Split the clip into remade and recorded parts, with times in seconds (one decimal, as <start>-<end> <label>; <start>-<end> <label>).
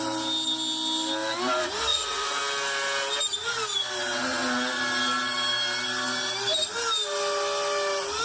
0.0-1.9 recorded; 1.9-2.4 remade; 2.4-8.2 recorded